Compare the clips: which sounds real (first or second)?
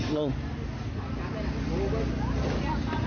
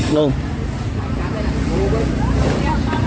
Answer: first